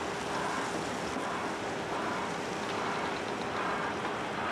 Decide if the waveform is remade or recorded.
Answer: recorded